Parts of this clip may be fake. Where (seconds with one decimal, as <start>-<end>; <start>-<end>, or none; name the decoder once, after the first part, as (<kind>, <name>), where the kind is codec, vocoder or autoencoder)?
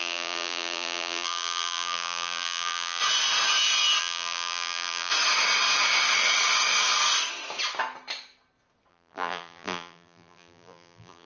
0.0-3.0 (vocoder, BigVGAN v2); 4.0-5.1; 8.9-11.3